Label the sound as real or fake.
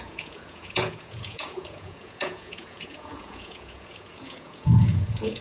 fake